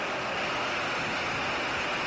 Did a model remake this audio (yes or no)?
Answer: no